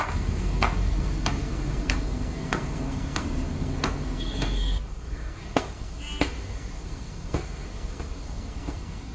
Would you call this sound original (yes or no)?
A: no